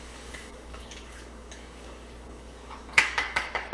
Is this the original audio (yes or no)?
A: no